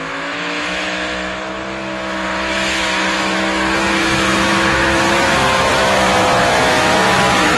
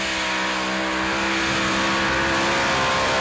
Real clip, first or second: second